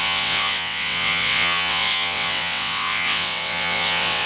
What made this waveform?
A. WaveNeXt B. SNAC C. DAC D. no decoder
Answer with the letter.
A